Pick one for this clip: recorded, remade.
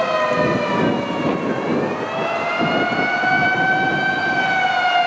recorded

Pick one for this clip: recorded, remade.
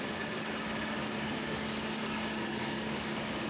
remade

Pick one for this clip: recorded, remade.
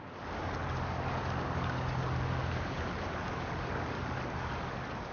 remade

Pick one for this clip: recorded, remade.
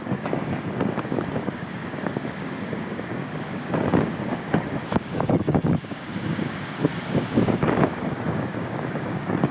remade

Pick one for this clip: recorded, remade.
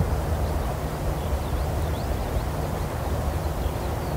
recorded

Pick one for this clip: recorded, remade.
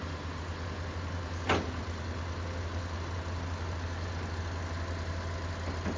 recorded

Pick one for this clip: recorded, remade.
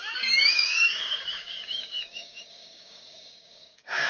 remade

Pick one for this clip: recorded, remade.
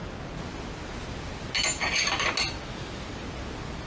recorded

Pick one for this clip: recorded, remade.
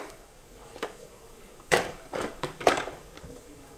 remade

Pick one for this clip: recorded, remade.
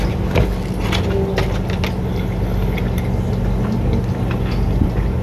recorded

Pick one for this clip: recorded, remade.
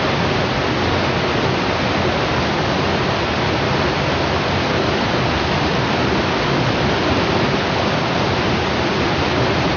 recorded